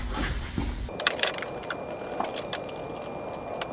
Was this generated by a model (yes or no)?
no